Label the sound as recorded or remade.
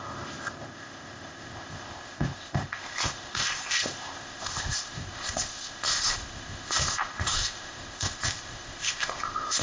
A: remade